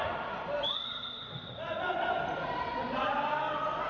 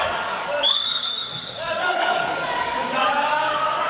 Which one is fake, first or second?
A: second